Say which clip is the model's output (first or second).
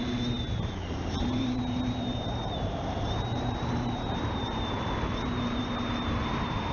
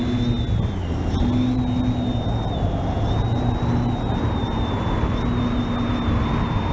first